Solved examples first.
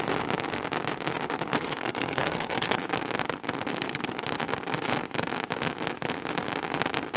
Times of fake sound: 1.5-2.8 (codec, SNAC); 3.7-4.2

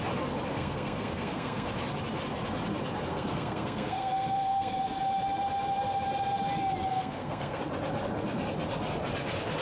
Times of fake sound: 0.5-1.7 (codec, SNAC); 3.1-4.8; 6.9-7.6

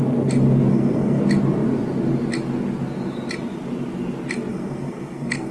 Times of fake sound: 0.7-1.2 (codec, SNAC); 4.5-5.5

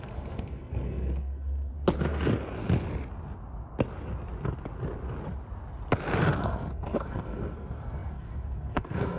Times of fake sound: 0.0-1.7 (codec, SNAC); 6.4-9.2

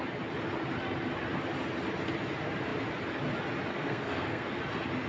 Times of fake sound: 3.7-4.6 (codec, SNAC)

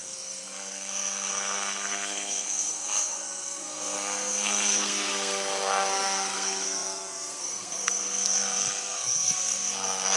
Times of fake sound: 0.0-10.2 (codec, SNAC)

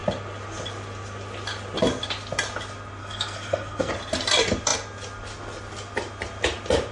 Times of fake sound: 3.0-3.9 (codec, SNAC)

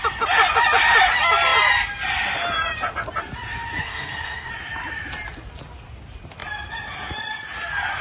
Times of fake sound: 3.8-4.5 (codec, SNAC)